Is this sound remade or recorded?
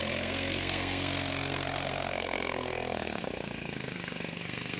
remade